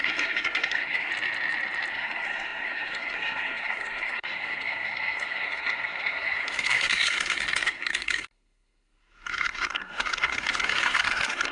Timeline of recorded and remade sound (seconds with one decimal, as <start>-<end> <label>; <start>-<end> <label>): 0.0-1.1 remade; 1.1-1.9 recorded; 1.9-11.5 remade